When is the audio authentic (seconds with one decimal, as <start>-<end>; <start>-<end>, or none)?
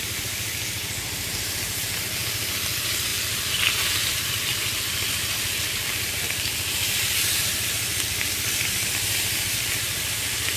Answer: 0.0-3.1; 4.1-4.6; 8.9-10.6